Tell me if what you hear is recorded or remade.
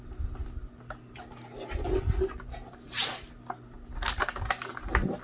recorded